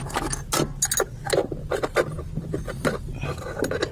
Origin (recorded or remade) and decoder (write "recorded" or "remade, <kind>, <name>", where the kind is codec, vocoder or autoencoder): recorded